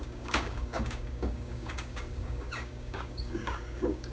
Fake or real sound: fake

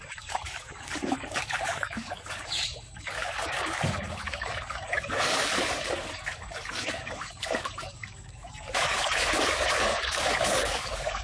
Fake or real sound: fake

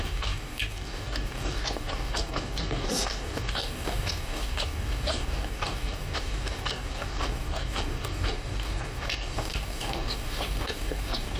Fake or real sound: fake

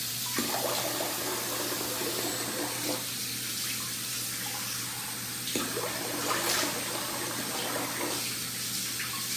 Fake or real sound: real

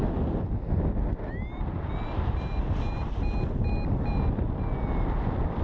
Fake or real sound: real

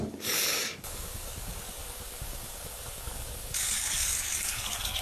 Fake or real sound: fake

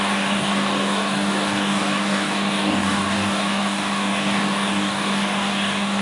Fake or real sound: fake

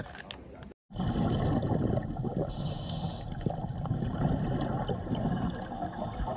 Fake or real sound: real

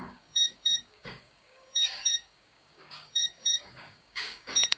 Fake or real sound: fake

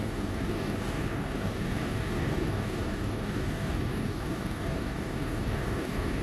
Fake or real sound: fake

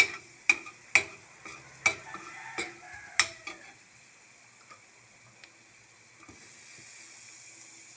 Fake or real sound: real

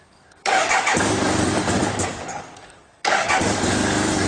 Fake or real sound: fake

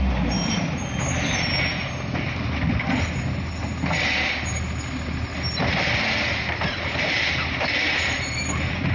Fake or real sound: real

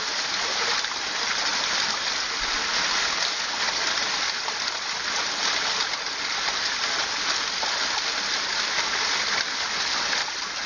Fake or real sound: real